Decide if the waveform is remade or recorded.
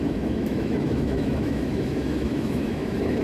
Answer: remade